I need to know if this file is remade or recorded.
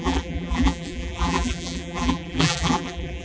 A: remade